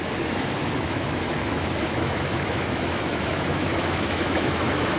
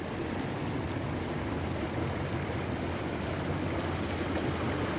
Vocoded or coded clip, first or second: first